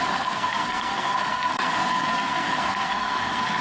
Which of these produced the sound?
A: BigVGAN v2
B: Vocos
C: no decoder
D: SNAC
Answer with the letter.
D